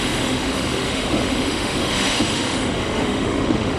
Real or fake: fake